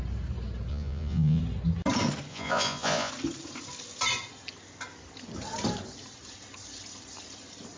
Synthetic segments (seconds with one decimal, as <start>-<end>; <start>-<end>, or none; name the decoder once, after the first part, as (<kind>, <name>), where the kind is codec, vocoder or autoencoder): 0.7-1.4 (vocoder, Vocos); 2.3-3.1

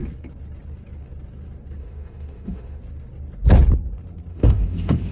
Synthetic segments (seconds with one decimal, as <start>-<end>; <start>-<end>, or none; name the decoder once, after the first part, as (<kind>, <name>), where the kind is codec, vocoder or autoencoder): 1.8-2.8 (autoencoder, DAC-VAE); 4.3-5.1